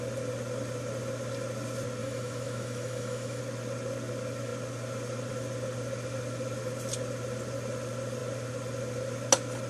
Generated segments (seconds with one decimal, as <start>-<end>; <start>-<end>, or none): 2.0-3.4